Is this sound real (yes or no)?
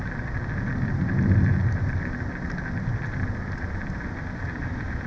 yes